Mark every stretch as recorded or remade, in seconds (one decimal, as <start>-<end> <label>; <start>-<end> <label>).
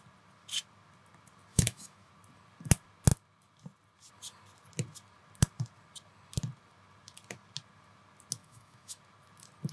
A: 0.0-1.5 recorded; 1.5-2.1 remade; 2.1-8.4 recorded; 8.4-9.0 remade; 9.0-9.7 recorded